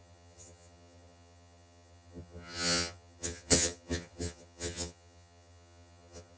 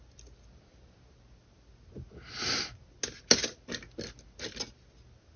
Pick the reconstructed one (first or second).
first